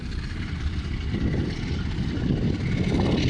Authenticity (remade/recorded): recorded